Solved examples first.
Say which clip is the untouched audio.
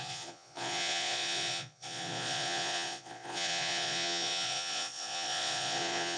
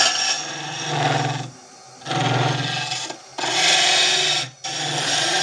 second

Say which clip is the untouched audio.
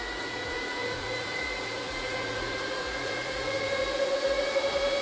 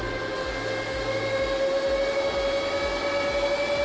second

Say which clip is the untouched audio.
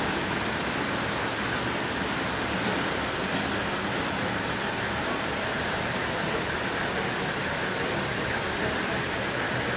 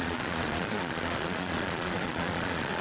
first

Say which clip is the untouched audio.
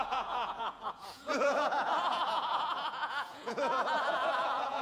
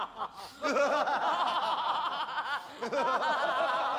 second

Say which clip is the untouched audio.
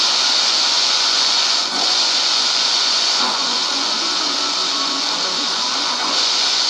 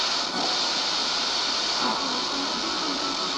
second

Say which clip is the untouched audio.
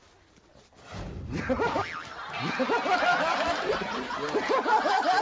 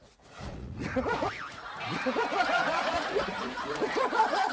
first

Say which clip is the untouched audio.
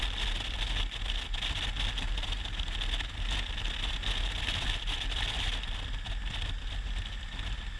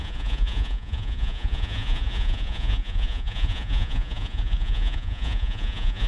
first